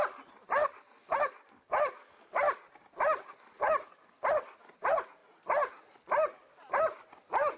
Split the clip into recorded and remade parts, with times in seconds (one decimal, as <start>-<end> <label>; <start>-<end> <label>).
0.0-7.6 recorded